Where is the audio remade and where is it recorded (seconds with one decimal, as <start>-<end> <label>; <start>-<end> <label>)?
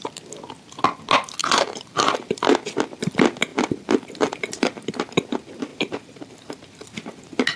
0.0-1.4 recorded; 1.4-2.4 remade; 2.4-3.5 recorded; 3.5-4.9 remade; 4.9-5.7 recorded; 5.7-6.3 remade; 6.3-7.6 recorded